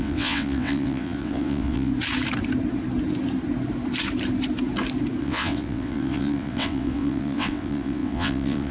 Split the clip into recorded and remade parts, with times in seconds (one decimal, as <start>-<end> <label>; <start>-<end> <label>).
0.0-1.9 remade; 1.9-5.2 recorded; 5.2-8.7 remade